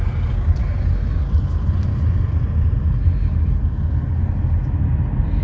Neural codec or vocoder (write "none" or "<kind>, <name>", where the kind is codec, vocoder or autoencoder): none